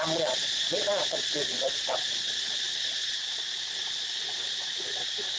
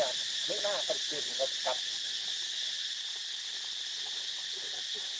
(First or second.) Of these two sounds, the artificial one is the first